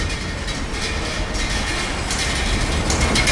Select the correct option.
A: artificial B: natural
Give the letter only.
B